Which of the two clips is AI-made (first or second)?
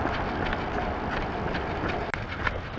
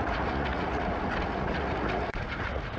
second